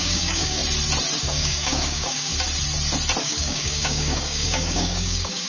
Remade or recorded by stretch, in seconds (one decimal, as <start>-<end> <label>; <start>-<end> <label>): 0.0-0.6 remade; 0.6-1.2 recorded; 1.2-2.3 remade; 2.3-3.2 recorded; 3.2-5.5 remade